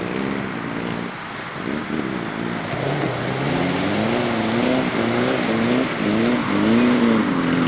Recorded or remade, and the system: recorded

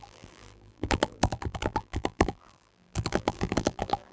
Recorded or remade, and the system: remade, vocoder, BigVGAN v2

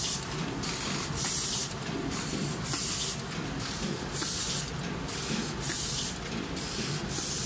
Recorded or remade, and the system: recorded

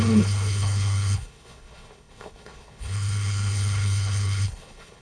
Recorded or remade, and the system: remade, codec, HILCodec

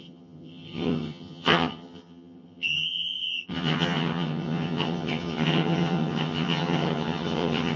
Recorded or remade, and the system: remade, vocoder, HiFi-GAN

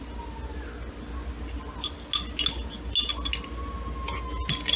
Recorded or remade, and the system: recorded